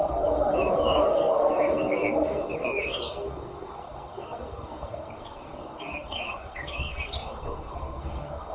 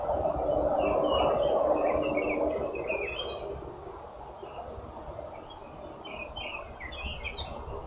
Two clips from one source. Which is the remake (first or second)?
first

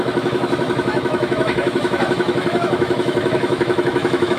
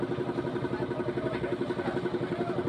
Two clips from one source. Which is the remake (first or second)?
first